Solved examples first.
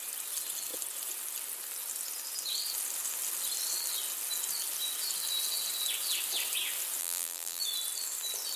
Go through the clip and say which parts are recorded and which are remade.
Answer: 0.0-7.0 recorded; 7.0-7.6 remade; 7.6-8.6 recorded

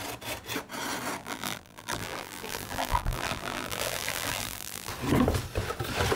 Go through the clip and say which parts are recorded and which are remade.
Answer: 0.0-1.2 recorded; 1.2-4.9 remade; 4.9-6.2 recorded

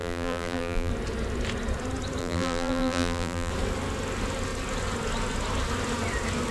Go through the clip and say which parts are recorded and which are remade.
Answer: 0.0-0.9 remade; 0.9-2.2 recorded; 2.2-3.5 remade; 3.5-6.5 recorded

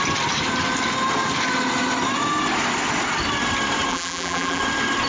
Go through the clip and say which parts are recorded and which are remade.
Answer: 0.0-3.9 recorded; 3.9-4.6 remade; 4.6-5.1 recorded

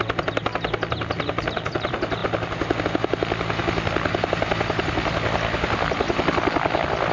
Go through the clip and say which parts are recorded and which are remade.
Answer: 0.0-7.1 recorded

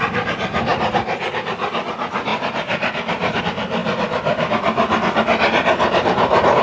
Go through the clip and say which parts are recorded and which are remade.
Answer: 0.0-0.7 recorded; 0.7-1.4 remade; 1.4-2.3 recorded; 2.3-3.4 remade; 3.4-6.6 recorded

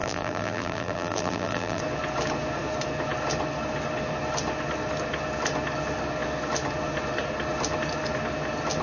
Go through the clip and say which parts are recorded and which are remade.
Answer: 0.0-1.8 remade; 1.8-8.8 recorded